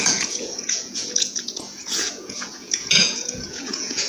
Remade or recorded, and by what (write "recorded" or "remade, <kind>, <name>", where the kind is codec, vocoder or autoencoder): remade, vocoder, Vocos